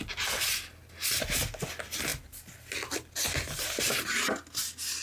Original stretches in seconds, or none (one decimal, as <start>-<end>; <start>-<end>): 0.0-5.0